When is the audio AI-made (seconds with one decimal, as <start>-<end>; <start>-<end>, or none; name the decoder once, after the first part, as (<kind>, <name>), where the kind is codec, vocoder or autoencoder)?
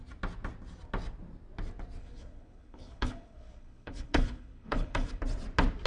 2.0-5.2 (codec, HILCodec)